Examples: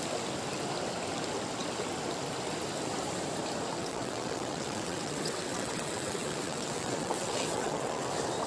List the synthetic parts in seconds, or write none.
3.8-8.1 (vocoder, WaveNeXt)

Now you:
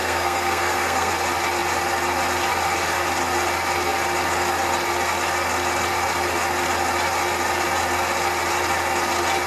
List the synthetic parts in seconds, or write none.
0.0-1.1 (codec, SNAC)

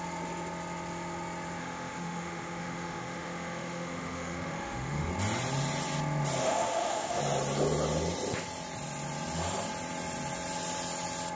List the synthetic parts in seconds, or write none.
1.6-5.1 (autoencoder, DAC-VAE); 6.4-7.2